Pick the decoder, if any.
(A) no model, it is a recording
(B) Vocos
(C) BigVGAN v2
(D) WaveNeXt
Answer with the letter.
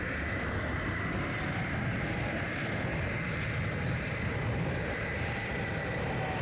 A